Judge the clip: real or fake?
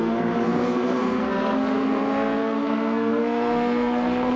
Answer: fake